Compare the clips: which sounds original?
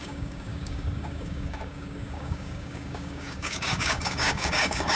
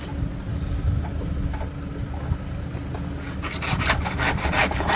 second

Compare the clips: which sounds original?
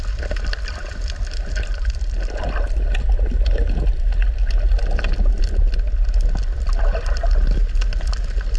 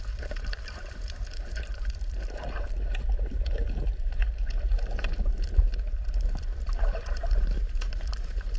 first